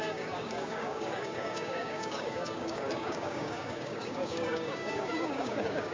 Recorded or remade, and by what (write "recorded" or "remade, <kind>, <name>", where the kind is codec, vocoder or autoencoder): remade, codec, DAC